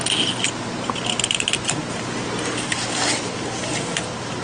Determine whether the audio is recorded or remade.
recorded